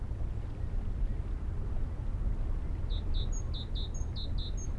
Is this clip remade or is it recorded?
recorded